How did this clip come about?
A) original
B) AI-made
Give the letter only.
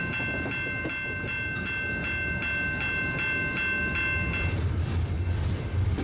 A